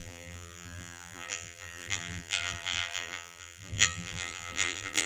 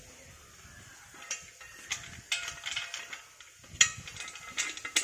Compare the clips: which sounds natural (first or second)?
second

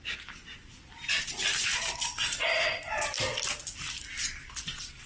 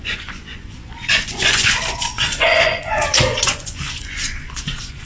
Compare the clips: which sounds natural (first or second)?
first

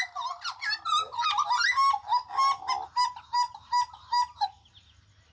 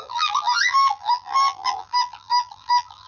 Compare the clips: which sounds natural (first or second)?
first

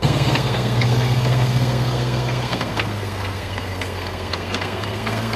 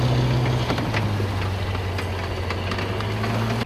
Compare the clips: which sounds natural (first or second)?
second